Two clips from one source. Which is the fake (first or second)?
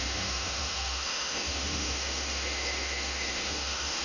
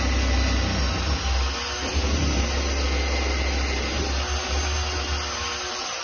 first